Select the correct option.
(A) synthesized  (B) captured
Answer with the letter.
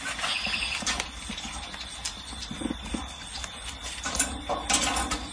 B